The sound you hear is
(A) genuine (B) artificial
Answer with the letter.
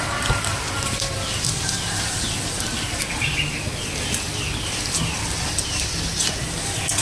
A